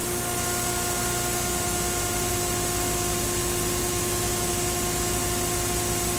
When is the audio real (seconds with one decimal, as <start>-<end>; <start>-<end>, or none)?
0.0-3.8; 4.5-6.2